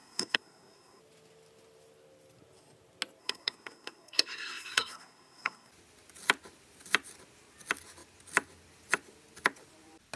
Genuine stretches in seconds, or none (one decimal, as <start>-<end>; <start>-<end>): 1.0-3.2; 5.7-10.2